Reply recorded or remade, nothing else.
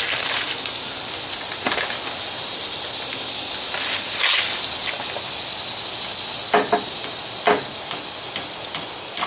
recorded